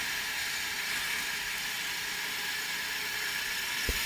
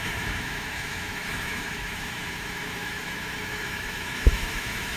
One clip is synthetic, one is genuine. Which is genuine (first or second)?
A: first